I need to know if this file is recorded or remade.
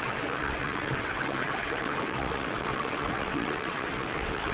remade